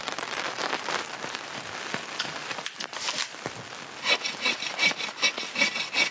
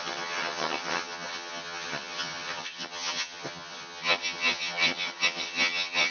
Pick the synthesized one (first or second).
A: second